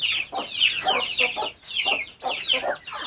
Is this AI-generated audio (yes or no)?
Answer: no